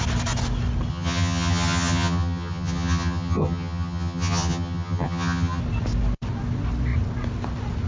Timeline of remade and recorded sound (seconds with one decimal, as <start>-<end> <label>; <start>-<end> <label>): 0.0-0.9 recorded; 0.9-5.6 remade; 5.6-7.9 recorded